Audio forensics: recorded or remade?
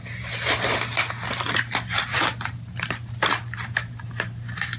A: recorded